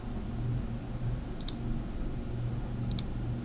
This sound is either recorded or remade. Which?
recorded